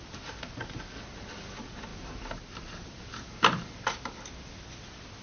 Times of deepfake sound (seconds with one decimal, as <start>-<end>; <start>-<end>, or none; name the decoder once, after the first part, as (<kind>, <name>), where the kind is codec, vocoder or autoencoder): none